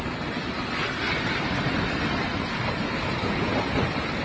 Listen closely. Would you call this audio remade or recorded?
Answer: recorded